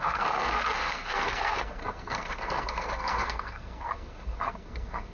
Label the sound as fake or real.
fake